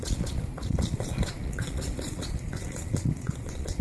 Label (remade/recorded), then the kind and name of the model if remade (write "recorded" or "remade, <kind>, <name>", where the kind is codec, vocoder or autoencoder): remade, vocoder, Vocos